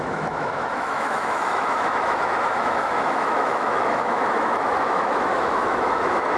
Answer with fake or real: fake